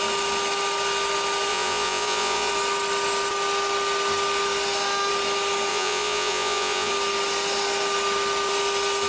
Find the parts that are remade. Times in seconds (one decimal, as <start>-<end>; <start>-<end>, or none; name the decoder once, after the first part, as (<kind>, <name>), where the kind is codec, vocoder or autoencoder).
1.5-2.5 (vocoder, Vocos); 5.7-6.9